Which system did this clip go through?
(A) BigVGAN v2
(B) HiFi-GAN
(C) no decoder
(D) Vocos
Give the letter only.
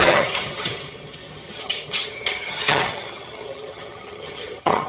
B